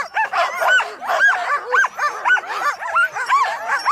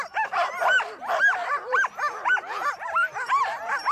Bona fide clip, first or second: first